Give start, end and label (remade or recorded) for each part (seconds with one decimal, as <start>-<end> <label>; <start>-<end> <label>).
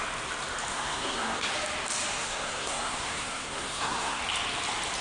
0.0-0.7 recorded; 0.7-1.5 remade; 1.5-2.2 recorded; 2.2-4.2 remade; 4.2-5.0 recorded